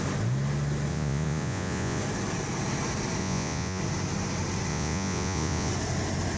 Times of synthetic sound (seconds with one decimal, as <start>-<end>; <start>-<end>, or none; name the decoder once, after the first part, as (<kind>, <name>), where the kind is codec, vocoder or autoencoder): 0.9-2.0 (vocoder, Vocos); 3.2-3.8; 4.7-5.7